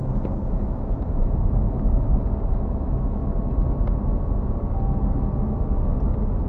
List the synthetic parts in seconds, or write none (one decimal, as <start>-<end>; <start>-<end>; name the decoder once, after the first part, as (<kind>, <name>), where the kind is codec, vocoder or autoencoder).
0.0-3.2 (autoencoder, DAC-VAE)